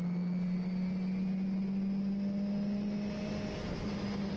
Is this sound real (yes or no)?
yes